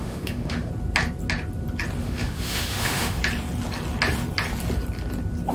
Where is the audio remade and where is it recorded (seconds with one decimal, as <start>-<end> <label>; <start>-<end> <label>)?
0.0-0.7 remade; 0.7-2.0 recorded; 2.0-3.2 remade; 3.2-5.5 recorded